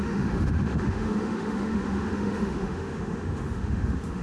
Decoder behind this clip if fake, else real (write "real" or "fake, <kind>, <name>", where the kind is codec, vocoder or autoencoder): fake, autoencoder, DAC-VAE